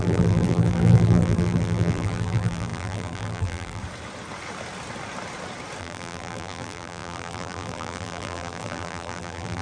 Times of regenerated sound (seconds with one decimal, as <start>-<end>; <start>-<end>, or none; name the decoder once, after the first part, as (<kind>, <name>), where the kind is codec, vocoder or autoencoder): 0.0-3.8 (vocoder, BigVGAN v2); 5.8-9.6